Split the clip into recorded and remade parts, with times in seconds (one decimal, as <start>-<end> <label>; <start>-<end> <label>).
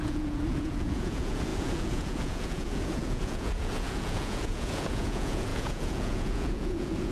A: 0.0-7.1 remade